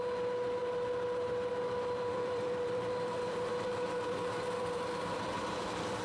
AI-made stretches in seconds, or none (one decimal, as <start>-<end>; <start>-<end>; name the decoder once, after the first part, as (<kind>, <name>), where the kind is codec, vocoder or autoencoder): 2.1-6.0 (vocoder, BigVGAN v2)

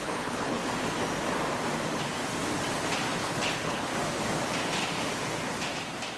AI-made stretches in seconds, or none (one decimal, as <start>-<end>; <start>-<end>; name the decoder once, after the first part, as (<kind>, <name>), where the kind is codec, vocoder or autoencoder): 0.0-0.6 (codec, HILCodec); 3.2-3.9